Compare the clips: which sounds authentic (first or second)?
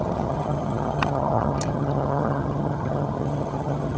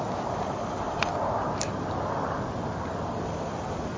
second